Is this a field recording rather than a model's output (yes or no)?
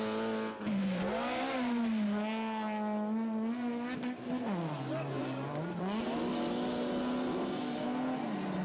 yes